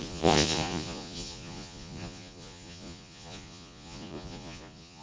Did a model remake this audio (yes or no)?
yes